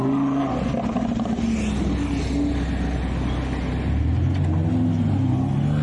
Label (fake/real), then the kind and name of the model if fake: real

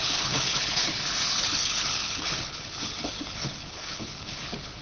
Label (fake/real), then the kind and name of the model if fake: fake, codec, HILCodec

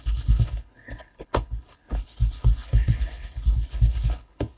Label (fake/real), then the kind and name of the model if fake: fake, codec, HILCodec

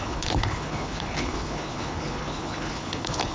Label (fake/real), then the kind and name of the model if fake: fake, codec, HILCodec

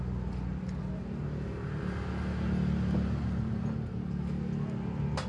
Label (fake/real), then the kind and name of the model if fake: real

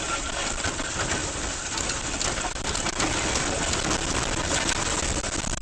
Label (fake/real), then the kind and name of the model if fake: real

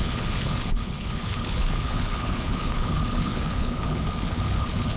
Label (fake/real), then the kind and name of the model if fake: fake, codec, HILCodec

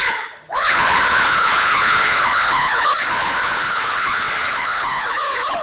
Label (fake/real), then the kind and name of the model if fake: fake, codec, HILCodec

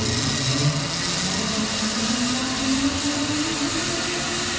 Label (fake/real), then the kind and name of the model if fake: real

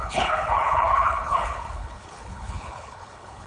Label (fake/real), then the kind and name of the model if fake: fake, codec, HILCodec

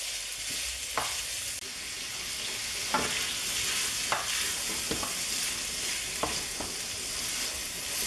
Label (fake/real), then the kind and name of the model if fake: real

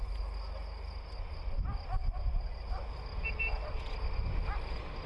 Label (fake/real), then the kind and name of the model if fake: real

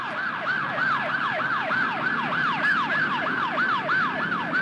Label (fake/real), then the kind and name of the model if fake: real